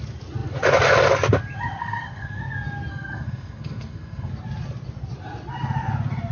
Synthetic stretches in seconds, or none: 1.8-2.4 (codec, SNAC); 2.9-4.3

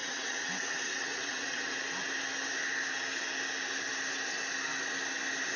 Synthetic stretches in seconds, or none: 0.0-1.8 (vocoder, WaveNeXt)

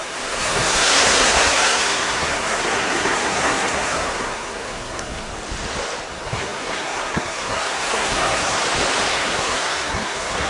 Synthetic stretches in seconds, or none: 0.0-5.3 (codec, SNAC); 6.1-8.6; 9.1-10.5

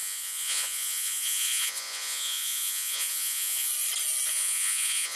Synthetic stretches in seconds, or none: 0.0-3.7 (vocoder, Vocos); 4.3-5.2

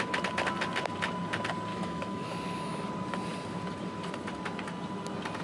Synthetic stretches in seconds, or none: 1.7-2.9 (autoencoder, DAC-VAE)

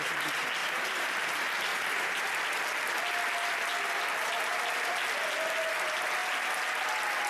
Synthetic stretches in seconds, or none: 0.6-1.2 (vocoder, BigVGAN v2); 1.7-2.4

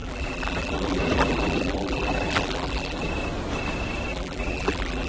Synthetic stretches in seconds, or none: 0.0-3.1 (vocoder, BigVGAN v2); 4.1-5.1